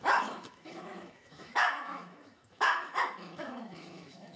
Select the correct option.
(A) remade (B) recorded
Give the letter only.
A